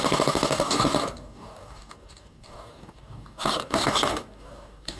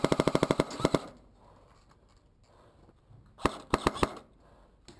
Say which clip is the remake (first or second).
first